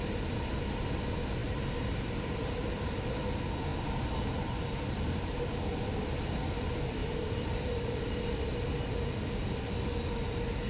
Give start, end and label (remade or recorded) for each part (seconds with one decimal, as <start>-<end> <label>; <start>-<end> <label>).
0.0-1.4 recorded; 1.4-2.9 remade; 2.9-3.7 recorded; 3.7-5.4 remade; 5.4-7.0 recorded; 7.0-8.4 remade; 8.4-10.7 recorded